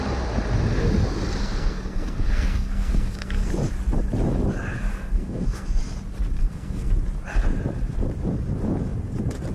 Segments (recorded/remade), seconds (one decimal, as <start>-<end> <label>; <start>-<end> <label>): 0.0-1.4 recorded; 1.4-3.5 remade; 3.5-4.9 recorded; 4.9-5.8 remade; 5.8-6.4 recorded; 6.4-6.9 remade; 6.9-9.5 recorded